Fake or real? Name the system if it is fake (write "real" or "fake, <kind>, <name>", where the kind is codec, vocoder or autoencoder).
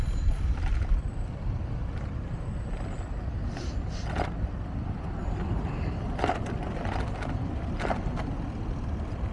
real